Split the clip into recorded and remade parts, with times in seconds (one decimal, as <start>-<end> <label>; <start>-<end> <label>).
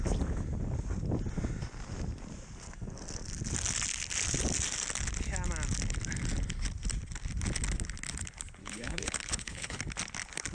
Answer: 0.0-8.6 recorded; 8.6-9.8 remade; 9.8-10.5 recorded